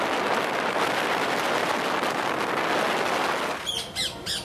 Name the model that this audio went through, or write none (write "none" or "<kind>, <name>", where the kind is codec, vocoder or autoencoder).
none